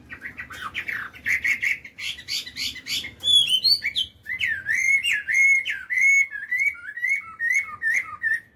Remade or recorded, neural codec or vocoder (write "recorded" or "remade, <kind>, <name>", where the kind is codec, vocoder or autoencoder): recorded